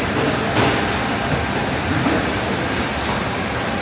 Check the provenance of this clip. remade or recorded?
recorded